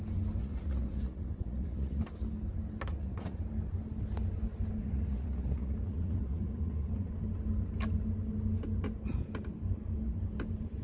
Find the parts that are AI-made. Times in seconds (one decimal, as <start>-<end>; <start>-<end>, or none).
0.4-2.0; 2.9-3.4; 4.8-7.1